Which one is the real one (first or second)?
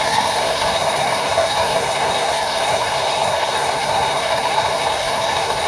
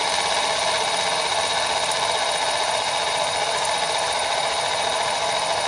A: second